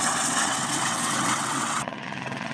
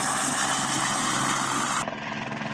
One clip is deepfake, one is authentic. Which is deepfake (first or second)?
first